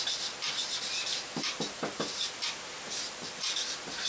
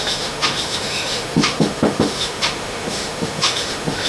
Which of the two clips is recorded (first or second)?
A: first